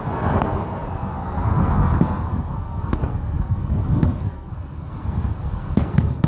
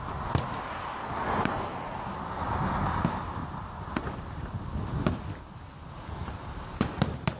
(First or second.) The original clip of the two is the second